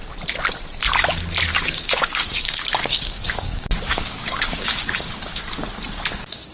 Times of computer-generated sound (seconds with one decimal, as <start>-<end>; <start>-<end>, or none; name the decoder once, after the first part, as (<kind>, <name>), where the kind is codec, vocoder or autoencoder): 1.5-5.4 (codec, DAC)